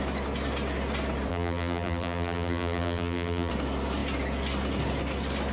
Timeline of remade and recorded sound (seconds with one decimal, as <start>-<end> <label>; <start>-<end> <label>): 0.0-1.3 recorded; 1.3-3.5 remade; 3.5-5.5 recorded